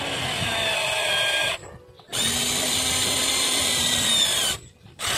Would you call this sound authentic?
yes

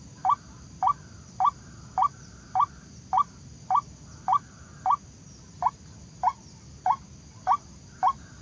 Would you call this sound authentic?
yes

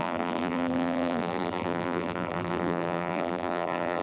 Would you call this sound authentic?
no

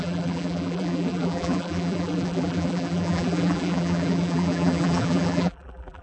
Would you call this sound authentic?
no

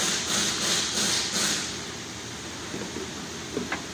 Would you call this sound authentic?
yes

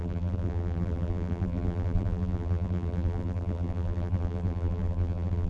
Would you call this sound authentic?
no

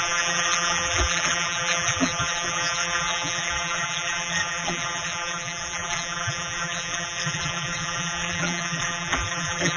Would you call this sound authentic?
no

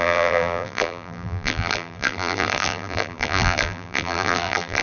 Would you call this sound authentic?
no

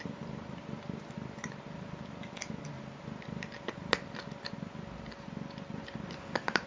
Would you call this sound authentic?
yes